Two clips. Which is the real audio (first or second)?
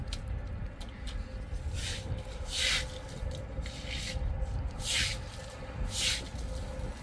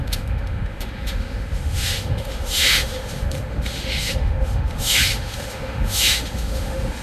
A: first